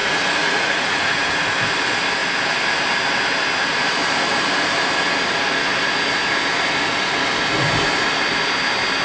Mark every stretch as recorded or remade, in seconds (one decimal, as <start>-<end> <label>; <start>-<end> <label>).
0.0-1.5 remade; 1.5-9.0 recorded